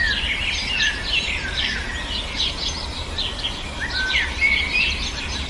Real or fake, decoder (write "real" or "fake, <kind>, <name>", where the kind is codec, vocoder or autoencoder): real